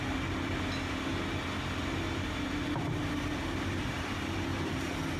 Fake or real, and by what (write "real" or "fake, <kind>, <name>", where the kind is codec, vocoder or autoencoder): real